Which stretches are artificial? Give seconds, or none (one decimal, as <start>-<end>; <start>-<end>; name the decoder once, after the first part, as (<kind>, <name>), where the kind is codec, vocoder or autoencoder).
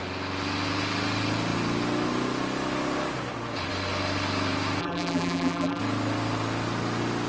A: 4.8-5.8 (vocoder, BigVGAN v2)